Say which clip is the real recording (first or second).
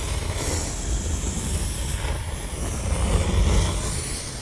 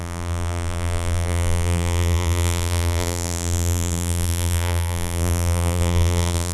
first